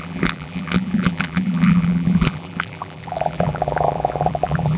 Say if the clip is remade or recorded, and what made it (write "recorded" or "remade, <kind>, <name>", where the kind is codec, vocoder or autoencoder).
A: remade, vocoder, BigVGAN v2